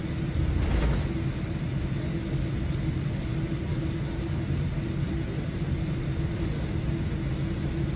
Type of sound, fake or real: real